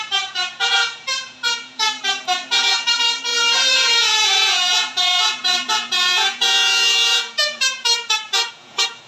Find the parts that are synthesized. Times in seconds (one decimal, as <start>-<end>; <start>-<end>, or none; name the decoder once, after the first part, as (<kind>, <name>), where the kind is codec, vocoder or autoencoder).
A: 0.0-9.1 (vocoder, Vocos)